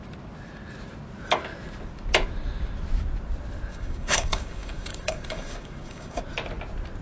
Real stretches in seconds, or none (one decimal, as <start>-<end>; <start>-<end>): 0.0-3.7; 6.2-7.0